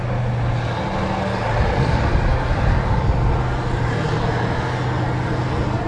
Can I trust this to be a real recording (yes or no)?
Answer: yes